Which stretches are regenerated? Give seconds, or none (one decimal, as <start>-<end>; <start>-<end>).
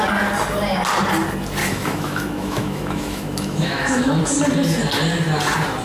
1.6-4.2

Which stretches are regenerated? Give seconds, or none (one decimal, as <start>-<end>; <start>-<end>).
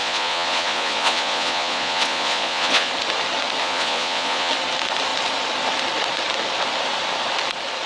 0.0-2.9; 3.6-4.5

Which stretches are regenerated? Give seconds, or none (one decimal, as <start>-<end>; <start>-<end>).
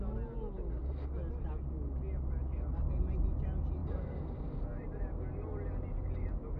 3.8-5.1